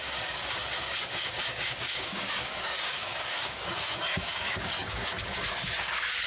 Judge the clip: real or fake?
fake